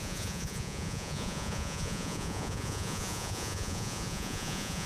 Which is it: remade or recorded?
remade